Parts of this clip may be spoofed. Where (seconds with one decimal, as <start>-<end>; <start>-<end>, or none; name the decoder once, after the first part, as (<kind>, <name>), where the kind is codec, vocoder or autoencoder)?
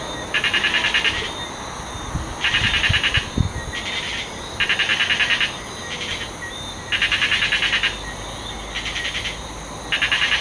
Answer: none